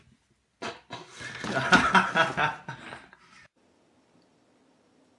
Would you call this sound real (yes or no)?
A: yes